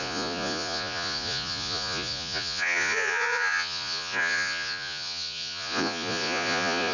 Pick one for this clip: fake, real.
fake